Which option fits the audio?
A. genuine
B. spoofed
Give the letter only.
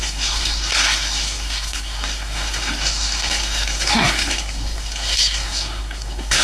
B